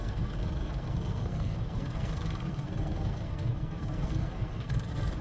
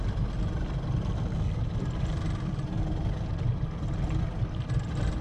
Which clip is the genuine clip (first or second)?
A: second